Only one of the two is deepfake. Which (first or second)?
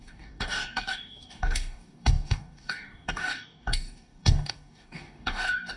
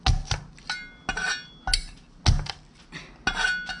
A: first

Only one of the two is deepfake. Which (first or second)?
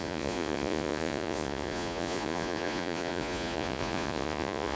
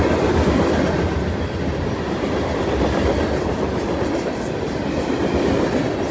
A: first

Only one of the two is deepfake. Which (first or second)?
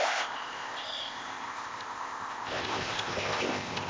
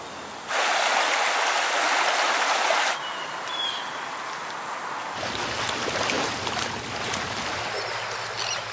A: first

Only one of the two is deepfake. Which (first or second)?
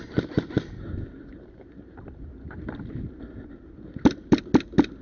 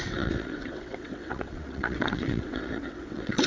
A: second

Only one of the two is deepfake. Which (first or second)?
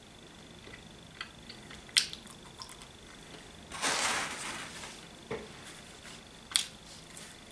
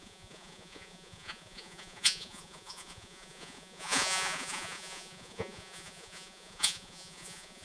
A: second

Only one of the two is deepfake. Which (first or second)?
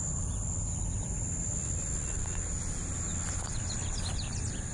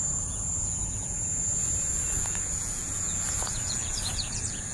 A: second